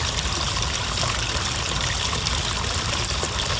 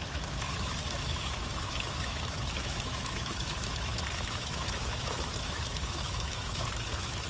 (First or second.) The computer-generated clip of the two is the second